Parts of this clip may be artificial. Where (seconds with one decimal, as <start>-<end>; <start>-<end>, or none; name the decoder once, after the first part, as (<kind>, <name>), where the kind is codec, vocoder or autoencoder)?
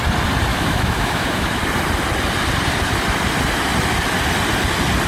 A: 0.5-1.6 (autoencoder, DAC-VAE)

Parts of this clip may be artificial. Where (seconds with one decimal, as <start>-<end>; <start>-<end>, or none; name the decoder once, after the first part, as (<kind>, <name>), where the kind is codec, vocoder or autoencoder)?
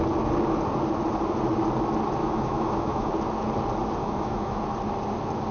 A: 2.2-3.1 (autoencoder, DAC-VAE); 4.0-4.6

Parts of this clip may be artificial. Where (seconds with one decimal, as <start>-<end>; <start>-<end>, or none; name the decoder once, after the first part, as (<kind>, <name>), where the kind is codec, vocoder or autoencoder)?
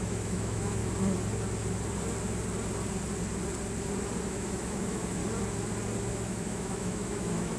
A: 0.0-0.8 (autoencoder, DAC-VAE); 4.3-5.2; 6.1-7.6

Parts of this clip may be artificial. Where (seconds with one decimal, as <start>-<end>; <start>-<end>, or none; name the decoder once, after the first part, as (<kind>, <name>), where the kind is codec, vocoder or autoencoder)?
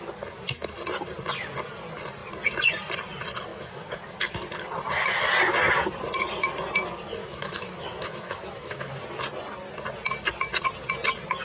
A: 3.5-4.0 (autoencoder, DAC-VAE); 7.2-9.0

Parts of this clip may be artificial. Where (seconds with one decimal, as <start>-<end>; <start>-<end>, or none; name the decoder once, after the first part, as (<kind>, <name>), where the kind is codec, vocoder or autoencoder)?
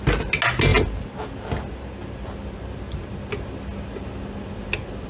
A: none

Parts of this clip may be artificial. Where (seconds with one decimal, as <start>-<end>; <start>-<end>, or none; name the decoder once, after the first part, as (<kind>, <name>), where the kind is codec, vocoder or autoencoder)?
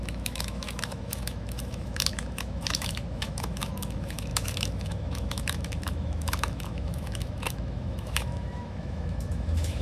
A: 0.0-9.8 (autoencoder, DAC-VAE)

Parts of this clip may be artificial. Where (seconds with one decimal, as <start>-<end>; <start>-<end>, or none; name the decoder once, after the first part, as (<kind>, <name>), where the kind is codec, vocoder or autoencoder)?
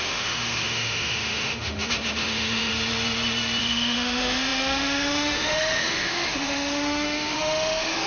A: 0.0-2.7 (autoencoder, DAC-VAE); 3.6-8.1